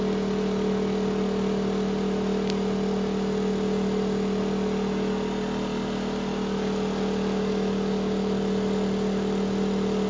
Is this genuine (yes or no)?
yes